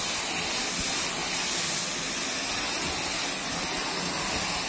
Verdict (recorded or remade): recorded